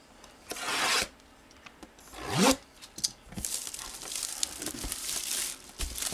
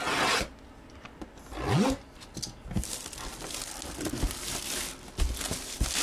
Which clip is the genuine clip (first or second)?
second